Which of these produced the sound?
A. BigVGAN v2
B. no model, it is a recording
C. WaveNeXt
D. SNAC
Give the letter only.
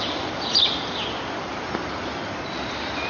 B